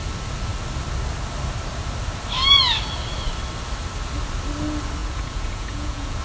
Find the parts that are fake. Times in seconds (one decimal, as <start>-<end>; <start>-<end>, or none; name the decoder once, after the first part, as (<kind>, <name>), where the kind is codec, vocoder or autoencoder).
5.0-6.2 (vocoder, Vocos)